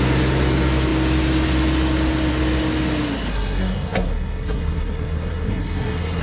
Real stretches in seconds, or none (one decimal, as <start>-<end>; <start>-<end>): 0.0-3.3